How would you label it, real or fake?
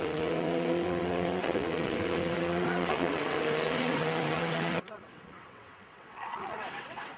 fake